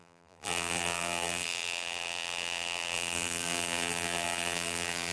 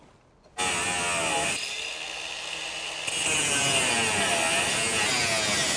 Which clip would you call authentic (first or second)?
second